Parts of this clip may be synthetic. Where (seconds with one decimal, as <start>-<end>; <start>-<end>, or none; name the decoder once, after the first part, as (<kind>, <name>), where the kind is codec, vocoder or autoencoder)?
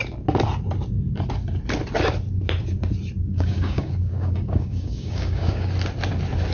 3.2-5.7 (codec, DAC)